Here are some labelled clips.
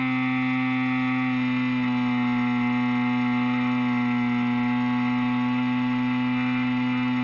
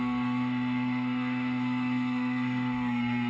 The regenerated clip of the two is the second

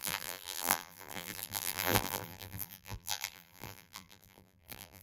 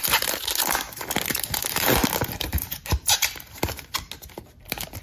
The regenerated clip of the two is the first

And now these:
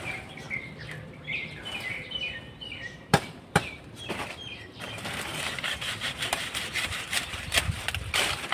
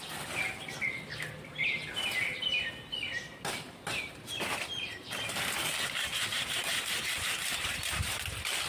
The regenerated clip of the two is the first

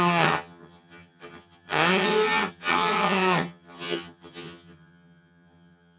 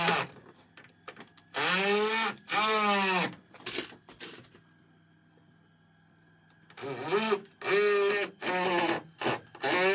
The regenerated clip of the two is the first